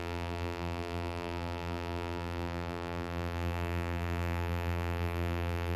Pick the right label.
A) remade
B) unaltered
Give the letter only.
A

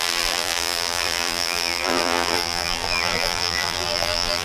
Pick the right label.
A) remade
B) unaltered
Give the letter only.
A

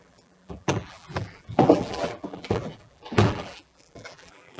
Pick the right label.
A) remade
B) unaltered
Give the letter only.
A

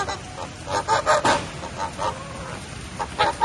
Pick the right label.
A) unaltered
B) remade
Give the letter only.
A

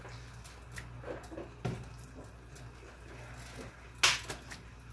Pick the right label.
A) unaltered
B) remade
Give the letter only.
A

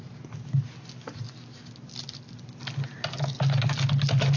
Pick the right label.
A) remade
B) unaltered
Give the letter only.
B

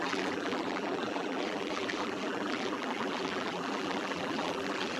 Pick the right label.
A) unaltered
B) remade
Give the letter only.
B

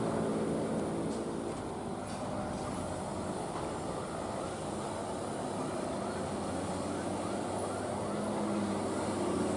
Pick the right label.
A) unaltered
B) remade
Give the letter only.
A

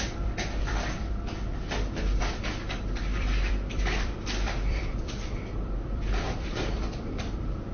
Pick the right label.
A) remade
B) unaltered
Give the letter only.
A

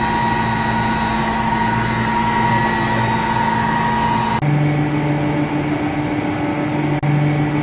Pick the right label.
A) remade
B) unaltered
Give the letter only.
B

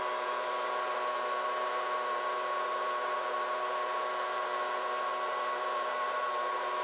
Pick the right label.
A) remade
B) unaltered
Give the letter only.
A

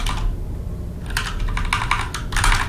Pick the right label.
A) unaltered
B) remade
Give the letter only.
A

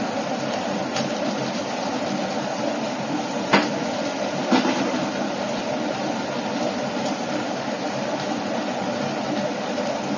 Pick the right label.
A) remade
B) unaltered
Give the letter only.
B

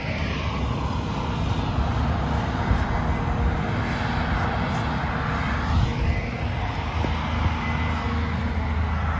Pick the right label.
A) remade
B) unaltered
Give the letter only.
B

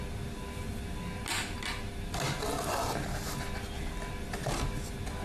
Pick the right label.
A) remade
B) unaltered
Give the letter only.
B